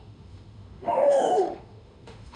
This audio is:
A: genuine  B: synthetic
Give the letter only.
B